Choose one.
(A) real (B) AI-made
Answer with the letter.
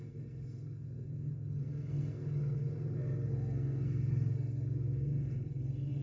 B